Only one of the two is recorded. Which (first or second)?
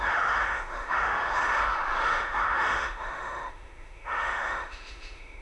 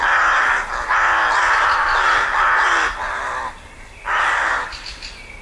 second